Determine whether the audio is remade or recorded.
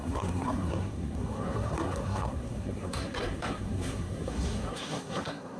remade